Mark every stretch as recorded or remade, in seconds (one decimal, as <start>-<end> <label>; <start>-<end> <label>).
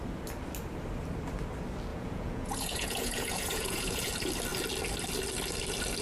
0.0-1.9 recorded; 1.9-4.1 remade; 4.1-6.0 recorded